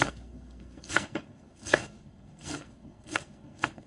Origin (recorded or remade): remade